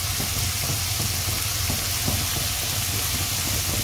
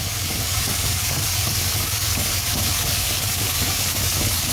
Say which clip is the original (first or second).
first